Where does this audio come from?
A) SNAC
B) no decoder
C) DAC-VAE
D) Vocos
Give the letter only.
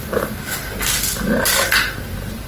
B